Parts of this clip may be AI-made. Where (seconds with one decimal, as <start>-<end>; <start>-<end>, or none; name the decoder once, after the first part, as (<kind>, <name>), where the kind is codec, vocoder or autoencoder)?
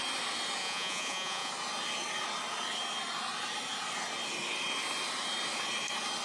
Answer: 0.6-1.5 (vocoder, Vocos)